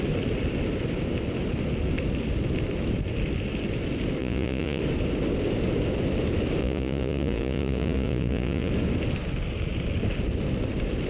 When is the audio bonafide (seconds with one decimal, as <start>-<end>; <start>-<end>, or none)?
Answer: 0.0-4.2; 4.8-6.6; 8.7-11.1